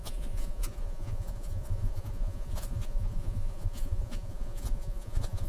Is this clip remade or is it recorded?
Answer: remade